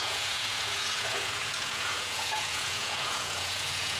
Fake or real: fake